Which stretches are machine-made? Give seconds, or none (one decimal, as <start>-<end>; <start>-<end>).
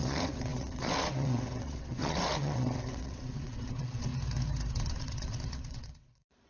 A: 0.0-4.1; 4.7-6.5